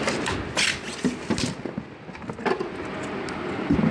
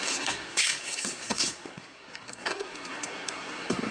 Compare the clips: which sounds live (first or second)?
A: first